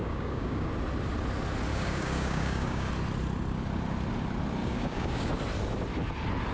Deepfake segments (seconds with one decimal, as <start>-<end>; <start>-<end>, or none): 0.0-0.7; 1.7-2.9; 4.6-5.3